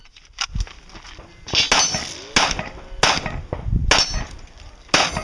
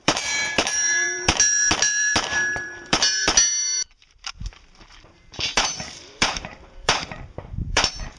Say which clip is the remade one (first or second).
second